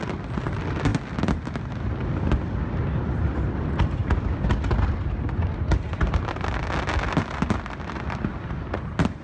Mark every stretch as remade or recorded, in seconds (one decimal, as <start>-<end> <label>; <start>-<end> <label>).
0.0-9.2 recorded